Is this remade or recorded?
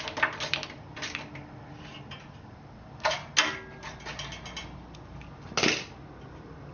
recorded